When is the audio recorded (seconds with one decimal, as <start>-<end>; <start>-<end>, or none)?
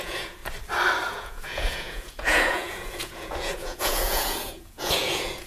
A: 0.4-1.1